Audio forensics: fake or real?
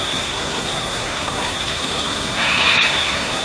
fake